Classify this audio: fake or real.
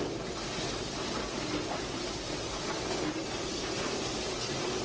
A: real